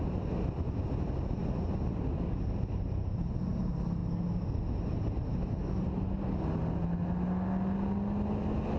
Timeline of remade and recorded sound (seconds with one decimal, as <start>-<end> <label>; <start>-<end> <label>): 0.0-8.8 recorded